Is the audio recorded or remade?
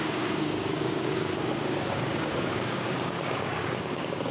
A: remade